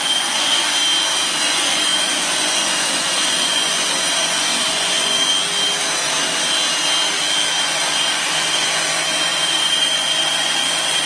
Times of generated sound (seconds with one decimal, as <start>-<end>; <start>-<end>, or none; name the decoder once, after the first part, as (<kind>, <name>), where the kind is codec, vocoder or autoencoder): 0.0-0.8 (vocoder, Vocos); 1.4-5.3; 7.6-11.1